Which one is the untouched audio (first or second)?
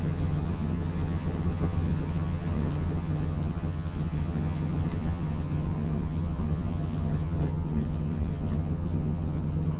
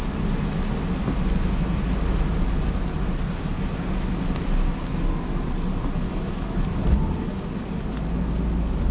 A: second